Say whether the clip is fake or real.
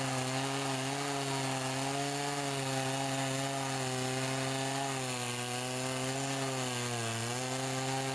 real